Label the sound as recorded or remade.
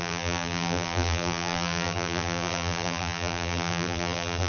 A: remade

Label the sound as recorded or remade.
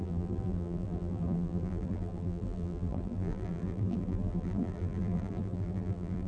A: remade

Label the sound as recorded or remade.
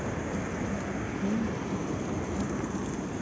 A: recorded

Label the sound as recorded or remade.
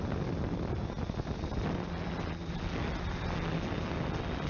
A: recorded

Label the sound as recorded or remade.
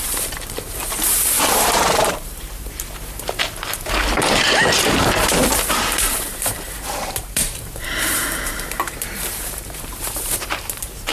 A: remade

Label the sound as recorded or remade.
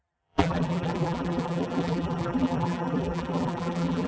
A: remade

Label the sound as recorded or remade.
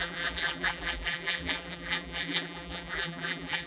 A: remade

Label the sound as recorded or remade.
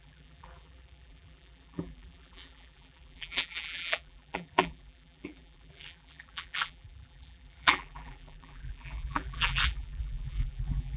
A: remade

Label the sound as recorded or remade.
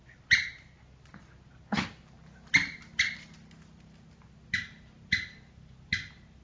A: recorded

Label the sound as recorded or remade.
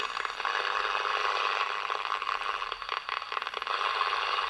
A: remade